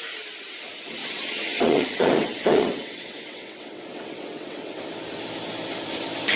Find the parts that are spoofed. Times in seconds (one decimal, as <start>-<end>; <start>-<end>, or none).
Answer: 1.0-4.8